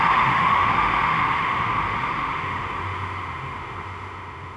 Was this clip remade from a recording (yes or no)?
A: yes